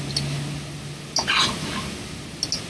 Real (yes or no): yes